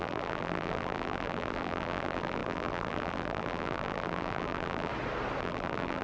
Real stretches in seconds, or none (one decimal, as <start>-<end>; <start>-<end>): 4.9-5.4